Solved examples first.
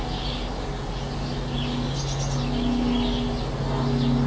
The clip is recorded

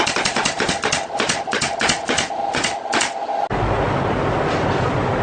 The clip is recorded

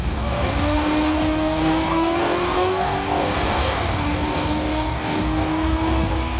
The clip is remade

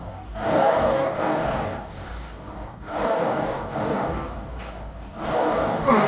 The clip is remade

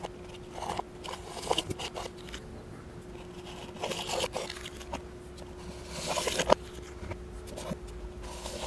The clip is recorded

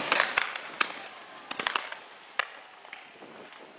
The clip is recorded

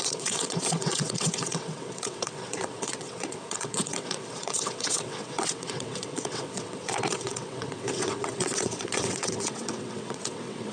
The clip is remade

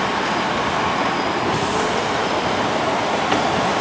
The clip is recorded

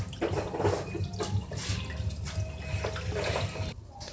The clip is recorded